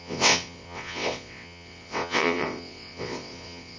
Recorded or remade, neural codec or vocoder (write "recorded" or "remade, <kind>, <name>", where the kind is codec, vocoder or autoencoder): remade, vocoder, WaveNeXt